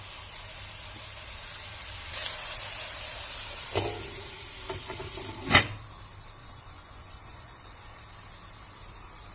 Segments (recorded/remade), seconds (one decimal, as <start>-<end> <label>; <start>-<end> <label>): 0.0-6.4 recorded; 6.4-8.0 remade; 8.0-9.3 recorded